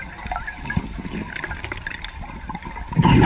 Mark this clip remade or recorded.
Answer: recorded